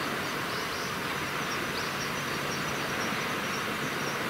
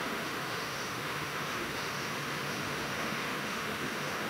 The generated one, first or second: second